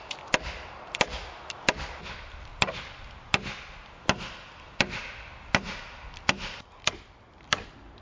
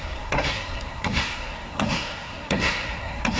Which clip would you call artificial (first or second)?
second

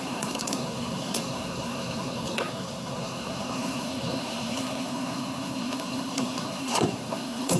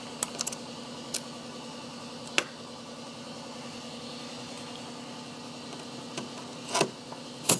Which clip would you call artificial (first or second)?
first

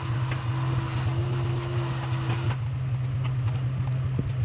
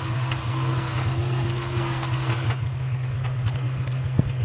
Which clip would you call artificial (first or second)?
second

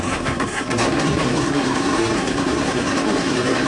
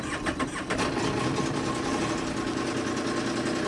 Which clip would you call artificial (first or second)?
first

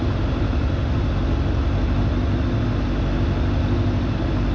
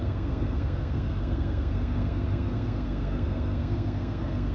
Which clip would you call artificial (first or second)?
second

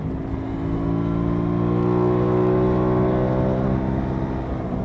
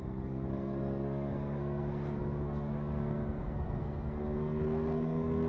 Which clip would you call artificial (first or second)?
second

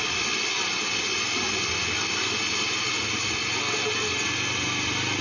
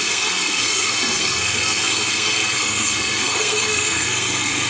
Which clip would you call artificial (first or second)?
second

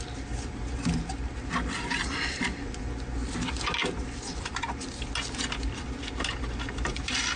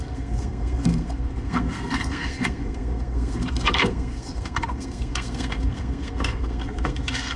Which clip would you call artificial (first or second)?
second